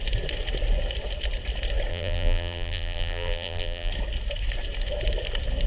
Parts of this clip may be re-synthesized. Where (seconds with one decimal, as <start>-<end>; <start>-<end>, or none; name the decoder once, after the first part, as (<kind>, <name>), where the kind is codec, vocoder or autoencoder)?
1.9-3.9 (vocoder, BigVGAN v2)